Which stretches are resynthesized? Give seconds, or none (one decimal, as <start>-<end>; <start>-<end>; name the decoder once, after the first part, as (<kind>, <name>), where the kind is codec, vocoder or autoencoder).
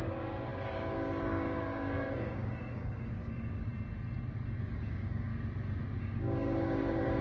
0.0-3.7 (codec, DAC); 4.6-5.3; 6.0-7.2